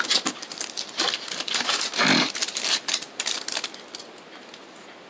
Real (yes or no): yes